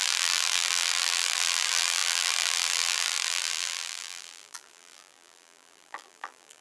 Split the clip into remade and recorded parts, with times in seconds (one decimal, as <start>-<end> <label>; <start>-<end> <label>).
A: 0.0-6.6 remade